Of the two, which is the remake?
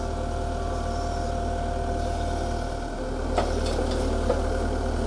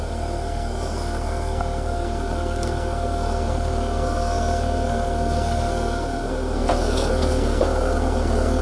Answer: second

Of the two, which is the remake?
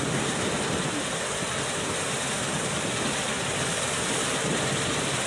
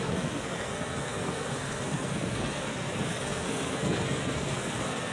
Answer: second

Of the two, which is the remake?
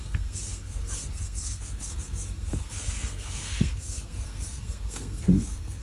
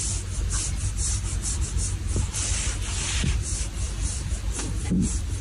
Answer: first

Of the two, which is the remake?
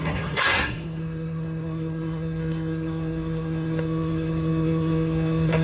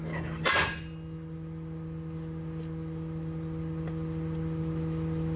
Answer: first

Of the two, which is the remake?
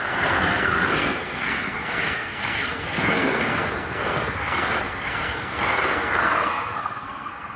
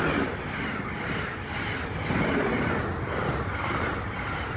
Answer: first